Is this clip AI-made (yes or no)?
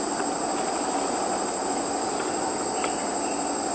no